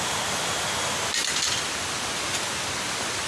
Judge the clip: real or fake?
real